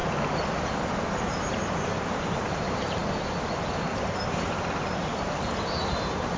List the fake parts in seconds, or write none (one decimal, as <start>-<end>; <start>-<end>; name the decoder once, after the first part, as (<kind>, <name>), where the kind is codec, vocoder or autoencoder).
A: 1.1-3.0 (vocoder, BigVGAN v2); 5.0-6.4